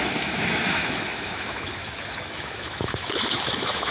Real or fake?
fake